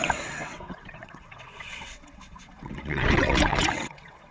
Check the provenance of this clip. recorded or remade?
remade